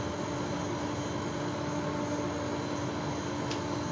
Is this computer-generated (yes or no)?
no